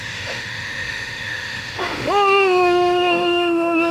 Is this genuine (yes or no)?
no